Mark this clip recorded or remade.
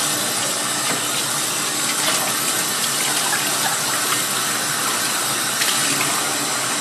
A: recorded